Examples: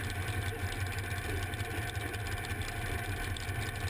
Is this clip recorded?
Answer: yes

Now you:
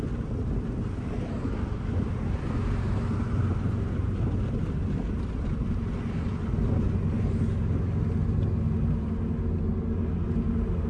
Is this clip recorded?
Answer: yes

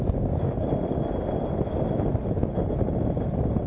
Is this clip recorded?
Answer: yes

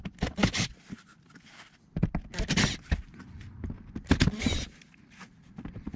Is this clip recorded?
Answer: yes